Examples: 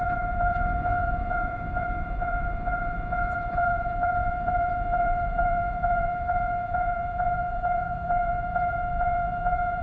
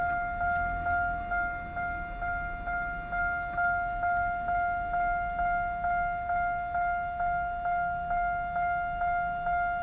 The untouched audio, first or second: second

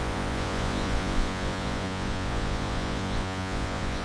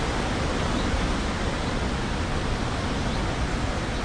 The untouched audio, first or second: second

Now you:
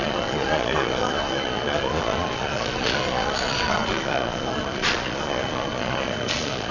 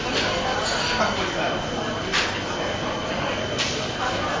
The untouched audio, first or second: second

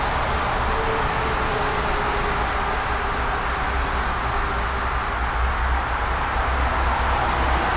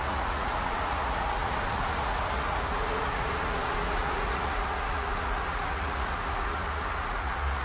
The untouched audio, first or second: first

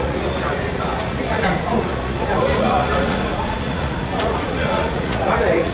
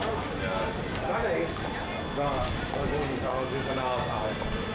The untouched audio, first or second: second